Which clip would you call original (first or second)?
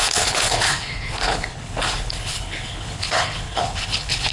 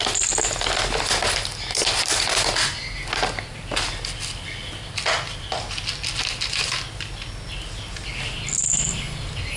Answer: second